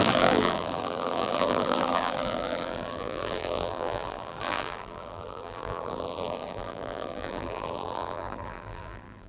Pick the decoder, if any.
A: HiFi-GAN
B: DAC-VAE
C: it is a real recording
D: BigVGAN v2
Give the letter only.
D